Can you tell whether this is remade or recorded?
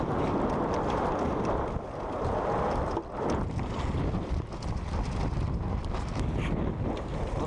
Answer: recorded